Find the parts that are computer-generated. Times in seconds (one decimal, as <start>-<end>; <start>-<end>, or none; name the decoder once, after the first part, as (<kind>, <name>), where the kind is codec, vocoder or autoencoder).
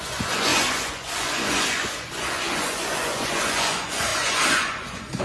0.0-5.2 (vocoder, Vocos)